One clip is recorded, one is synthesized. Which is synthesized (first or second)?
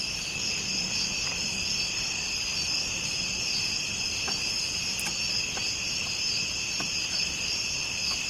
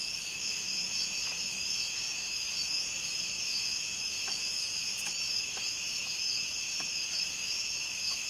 second